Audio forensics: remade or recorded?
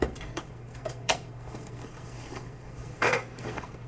remade